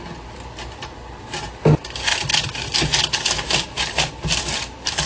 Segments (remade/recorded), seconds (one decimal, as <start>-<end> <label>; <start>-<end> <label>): 0.0-5.1 recorded